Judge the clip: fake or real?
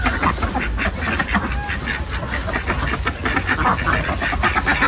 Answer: real